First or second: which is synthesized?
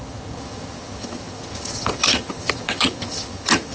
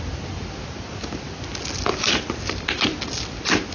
first